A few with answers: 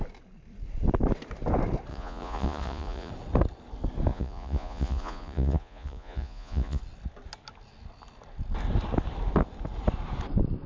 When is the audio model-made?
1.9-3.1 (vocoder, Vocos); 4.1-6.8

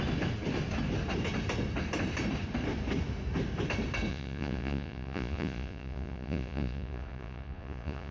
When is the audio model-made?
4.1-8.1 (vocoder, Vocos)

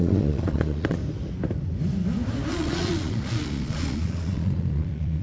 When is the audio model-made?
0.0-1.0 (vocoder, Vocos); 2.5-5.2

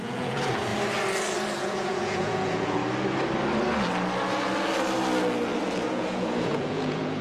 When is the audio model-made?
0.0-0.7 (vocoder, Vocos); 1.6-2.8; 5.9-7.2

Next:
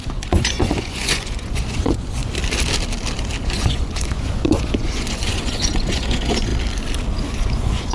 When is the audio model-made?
0.0-2.2 (vocoder, Vocos); 3.4-6.5; 7.3-7.9

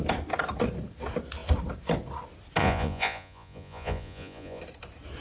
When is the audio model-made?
2.6-4.6 (vocoder, Vocos)

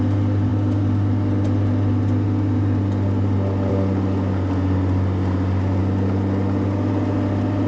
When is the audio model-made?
none

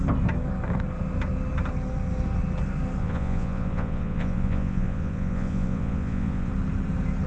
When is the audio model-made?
3.0-6.5 (vocoder, Vocos)